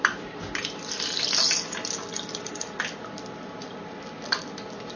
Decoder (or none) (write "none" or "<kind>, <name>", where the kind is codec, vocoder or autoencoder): none